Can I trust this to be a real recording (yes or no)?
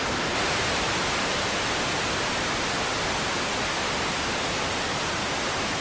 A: yes